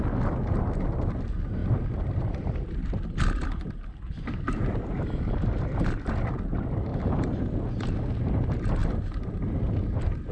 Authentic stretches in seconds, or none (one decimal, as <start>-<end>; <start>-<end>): 0.0-1.6; 5.3-6.9; 7.6-8.8; 9.6-10.3